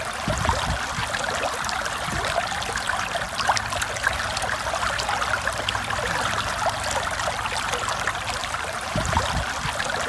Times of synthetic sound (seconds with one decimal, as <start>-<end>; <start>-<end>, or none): 8.4-9.2